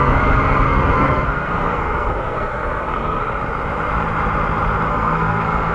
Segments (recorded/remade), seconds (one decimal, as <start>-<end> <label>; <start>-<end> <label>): 0.0-3.2 remade; 3.2-4.9 recorded; 4.9-5.7 remade